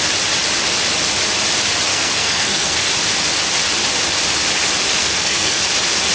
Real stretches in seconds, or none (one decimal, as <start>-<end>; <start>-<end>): 0.0-1.9; 2.9-5.0; 5.6-6.1